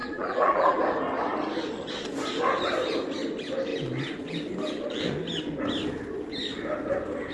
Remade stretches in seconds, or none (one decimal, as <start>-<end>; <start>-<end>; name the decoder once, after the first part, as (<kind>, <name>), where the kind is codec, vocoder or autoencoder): 0.0-0.8 (vocoder, BigVGAN v2)